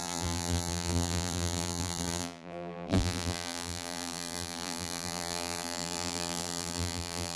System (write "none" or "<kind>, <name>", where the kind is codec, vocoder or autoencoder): vocoder, BigVGAN v2